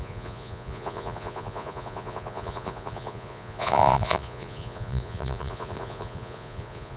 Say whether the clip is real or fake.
fake